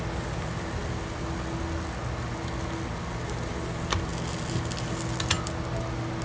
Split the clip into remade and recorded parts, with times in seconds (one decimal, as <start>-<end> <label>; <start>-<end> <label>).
0.0-6.2 recorded